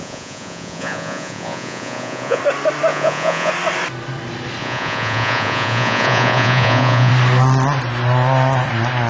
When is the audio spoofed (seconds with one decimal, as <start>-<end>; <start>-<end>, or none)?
0.0-2.4; 2.9-3.5; 4.6-7.1